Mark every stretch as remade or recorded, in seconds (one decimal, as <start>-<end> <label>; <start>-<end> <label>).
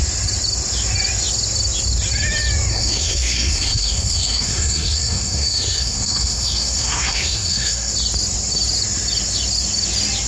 0.0-2.7 recorded; 2.7-7.9 remade; 7.9-10.3 recorded